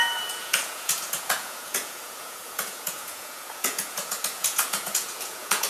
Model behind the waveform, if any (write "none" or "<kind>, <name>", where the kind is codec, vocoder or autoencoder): vocoder, Vocos